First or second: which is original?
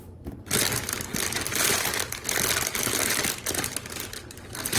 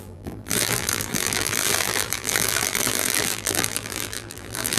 first